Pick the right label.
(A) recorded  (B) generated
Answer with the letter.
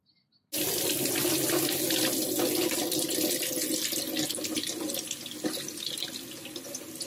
A